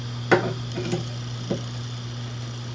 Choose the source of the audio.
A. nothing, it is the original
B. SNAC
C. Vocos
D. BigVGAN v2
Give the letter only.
A